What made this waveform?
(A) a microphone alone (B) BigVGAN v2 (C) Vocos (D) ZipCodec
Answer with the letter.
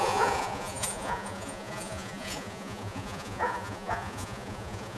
C